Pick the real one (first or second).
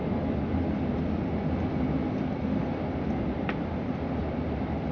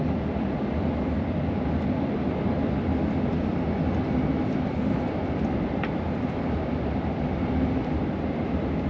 first